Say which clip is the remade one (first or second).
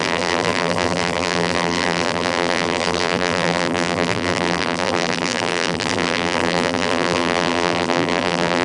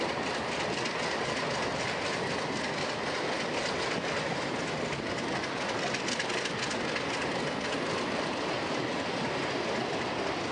first